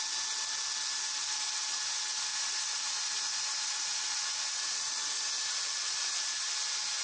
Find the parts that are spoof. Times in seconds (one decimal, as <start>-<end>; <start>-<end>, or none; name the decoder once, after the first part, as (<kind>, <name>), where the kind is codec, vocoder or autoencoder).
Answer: 2.3-6.5 (vocoder, Vocos)